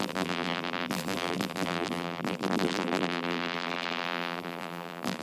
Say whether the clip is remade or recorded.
remade